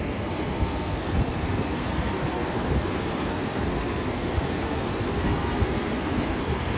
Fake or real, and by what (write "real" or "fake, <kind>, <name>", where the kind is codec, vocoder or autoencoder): fake, codec, SNAC